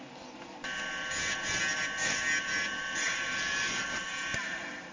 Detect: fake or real real